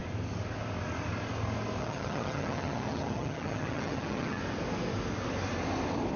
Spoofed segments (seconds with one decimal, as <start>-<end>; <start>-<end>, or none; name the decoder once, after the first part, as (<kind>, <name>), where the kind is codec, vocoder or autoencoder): 1.8-4.4 (vocoder, HiFi-GAN)

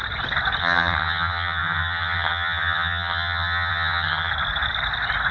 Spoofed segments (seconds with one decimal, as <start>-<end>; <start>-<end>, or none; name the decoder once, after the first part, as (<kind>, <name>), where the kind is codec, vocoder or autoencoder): 0.6-4.3 (vocoder, HiFi-GAN)

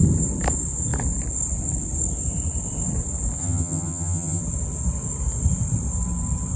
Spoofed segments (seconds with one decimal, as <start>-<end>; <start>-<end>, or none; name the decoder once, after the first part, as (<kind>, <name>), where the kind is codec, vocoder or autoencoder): 3.4-4.4 (vocoder, HiFi-GAN)

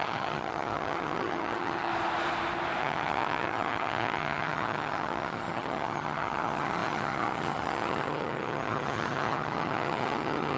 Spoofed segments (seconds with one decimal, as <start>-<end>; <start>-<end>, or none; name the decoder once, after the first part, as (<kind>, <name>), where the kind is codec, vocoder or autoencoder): 0.0-1.9 (vocoder, HiFi-GAN); 2.8-10.6

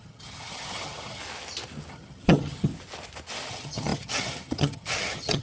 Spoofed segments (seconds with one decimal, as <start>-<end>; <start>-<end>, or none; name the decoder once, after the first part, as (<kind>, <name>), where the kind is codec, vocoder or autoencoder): 0.0-1.2 (vocoder, HiFi-GAN); 1.9-2.7; 3.5-5.4